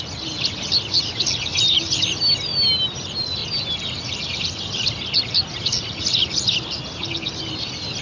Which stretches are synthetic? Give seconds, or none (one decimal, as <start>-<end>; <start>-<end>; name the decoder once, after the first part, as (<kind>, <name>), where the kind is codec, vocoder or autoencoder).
none